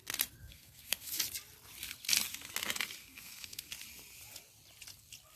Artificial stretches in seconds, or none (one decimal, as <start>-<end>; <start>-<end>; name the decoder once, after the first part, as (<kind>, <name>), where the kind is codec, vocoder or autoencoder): 0.4-1.2 (codec, SNAC); 3.0-3.7